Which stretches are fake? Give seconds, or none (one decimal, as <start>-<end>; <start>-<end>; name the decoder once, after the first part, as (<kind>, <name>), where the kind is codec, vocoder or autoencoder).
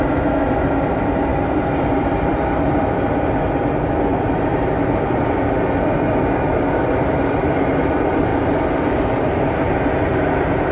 1.3-2.5 (vocoder, BigVGAN v2); 4.1-4.7; 8.3-9.8